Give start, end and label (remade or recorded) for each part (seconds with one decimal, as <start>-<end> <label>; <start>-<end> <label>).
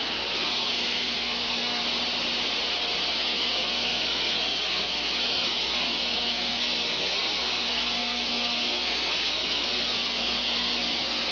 0.0-1.8 remade; 1.8-3.1 recorded; 3.1-11.3 remade